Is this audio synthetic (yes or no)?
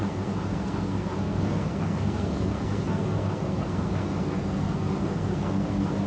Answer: yes